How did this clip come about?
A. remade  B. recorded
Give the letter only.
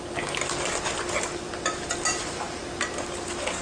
B